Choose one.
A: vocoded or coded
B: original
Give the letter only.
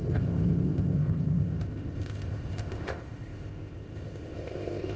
A